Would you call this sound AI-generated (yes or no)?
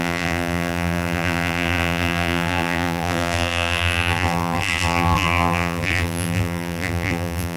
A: yes